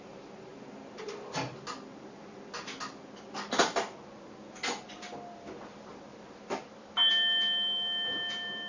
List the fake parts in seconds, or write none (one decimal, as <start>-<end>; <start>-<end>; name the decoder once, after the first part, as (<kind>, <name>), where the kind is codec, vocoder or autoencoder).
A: none